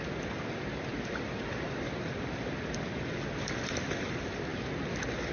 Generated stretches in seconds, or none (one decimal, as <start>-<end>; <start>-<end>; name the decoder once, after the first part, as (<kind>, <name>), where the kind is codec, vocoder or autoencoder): none